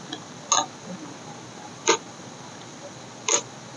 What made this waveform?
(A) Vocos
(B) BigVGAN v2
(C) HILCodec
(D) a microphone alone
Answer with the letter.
D